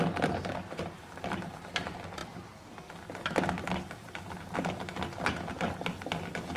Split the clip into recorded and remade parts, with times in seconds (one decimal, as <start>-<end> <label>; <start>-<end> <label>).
0.0-6.6 recorded